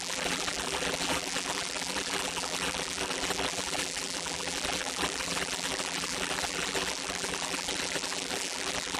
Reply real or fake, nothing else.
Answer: fake